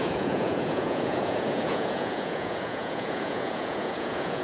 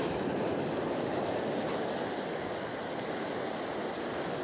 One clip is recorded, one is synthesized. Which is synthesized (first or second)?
first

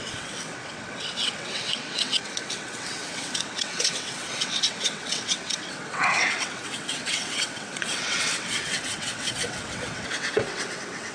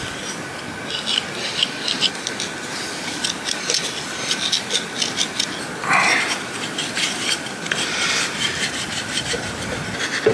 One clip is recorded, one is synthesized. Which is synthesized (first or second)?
first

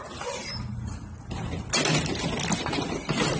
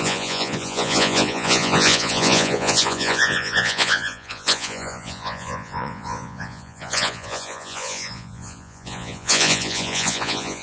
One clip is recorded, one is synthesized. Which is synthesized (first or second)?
second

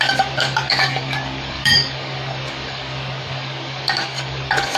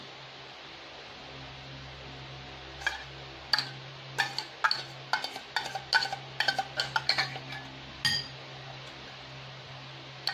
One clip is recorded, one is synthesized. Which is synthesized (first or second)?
first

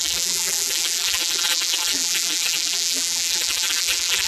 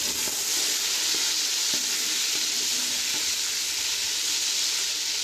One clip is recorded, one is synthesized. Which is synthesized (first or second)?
first